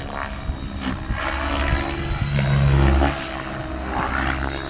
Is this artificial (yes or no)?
no